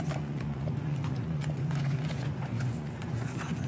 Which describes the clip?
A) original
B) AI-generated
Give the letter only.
B